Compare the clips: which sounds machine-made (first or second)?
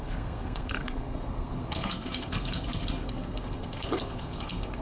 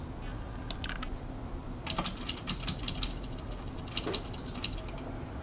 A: first